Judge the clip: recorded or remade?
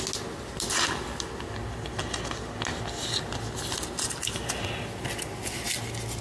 recorded